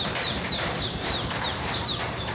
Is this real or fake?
fake